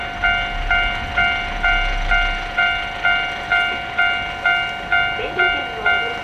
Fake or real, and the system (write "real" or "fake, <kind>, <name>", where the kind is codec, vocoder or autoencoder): real